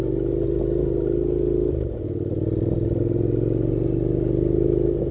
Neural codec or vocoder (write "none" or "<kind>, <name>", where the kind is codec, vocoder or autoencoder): none